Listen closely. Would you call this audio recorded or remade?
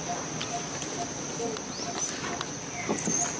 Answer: recorded